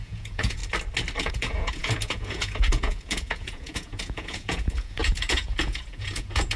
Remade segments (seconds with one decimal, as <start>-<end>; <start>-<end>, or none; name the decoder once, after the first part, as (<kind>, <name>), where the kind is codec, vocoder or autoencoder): 0.0-0.6 (vocoder, Vocos); 1.2-6.6